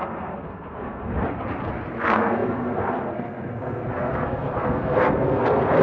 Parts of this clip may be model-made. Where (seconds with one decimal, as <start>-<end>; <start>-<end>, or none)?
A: 0.0-1.1; 2.0-5.8